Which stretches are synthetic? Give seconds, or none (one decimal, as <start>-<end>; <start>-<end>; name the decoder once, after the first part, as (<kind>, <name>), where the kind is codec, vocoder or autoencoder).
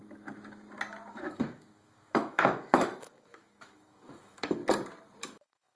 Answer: 1.1-4.6 (autoencoder, DAC-VAE); 5.2-5.7